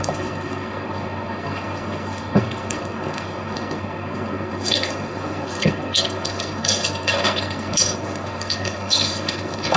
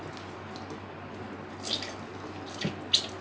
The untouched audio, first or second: second